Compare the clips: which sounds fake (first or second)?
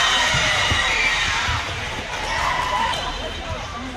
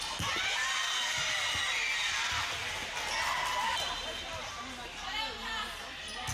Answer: first